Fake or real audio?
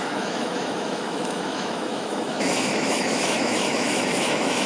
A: fake